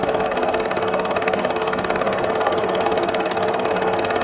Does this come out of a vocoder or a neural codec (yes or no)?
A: yes